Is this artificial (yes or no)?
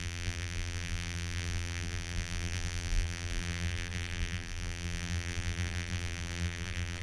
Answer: yes